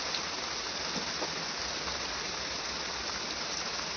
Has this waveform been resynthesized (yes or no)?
no